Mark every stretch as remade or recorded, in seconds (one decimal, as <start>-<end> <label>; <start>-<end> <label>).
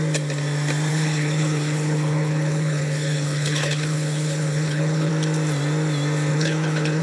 0.0-0.9 recorded; 0.9-5.1 remade; 5.1-6.3 recorded; 6.3-7.0 remade